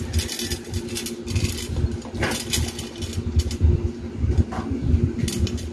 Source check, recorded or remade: recorded